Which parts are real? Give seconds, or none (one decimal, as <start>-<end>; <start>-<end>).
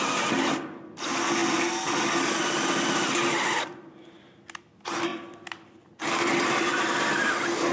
0.0-7.7